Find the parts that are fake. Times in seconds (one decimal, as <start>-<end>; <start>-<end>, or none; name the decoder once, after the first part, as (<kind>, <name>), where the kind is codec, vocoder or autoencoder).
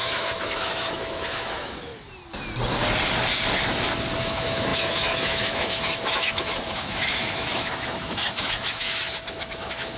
0.0-1.9 (autoencoder, DAC-VAE); 4.2-10.0